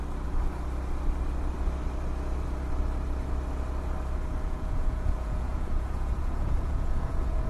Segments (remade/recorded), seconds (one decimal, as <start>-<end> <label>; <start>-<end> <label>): 0.0-4.4 recorded; 4.4-7.5 remade